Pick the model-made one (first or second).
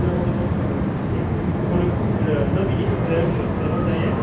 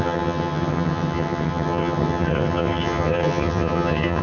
second